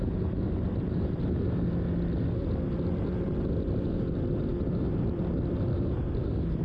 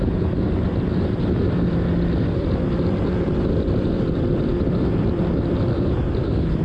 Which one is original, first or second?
first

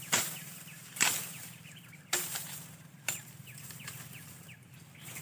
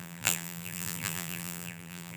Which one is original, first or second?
first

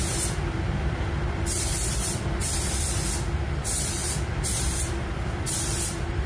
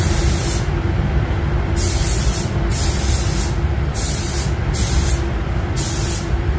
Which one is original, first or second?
second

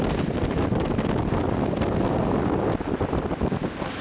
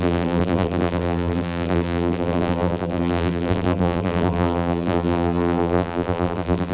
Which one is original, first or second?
first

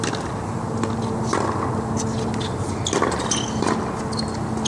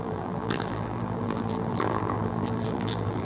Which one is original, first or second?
first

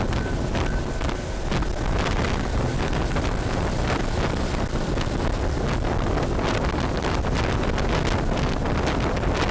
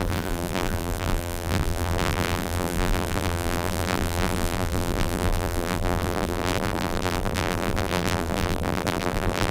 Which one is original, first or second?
first